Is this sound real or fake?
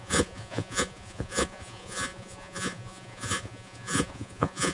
fake